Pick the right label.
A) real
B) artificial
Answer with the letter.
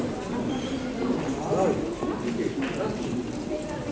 A